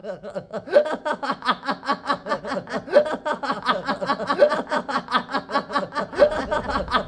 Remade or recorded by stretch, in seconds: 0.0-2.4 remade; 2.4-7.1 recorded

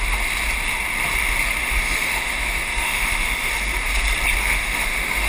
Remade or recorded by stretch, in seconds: 0.0-1.6 recorded; 1.6-3.5 remade; 3.5-4.4 recorded; 4.4-5.3 remade

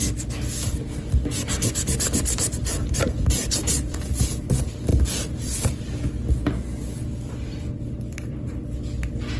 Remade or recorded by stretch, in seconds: 0.0-9.4 recorded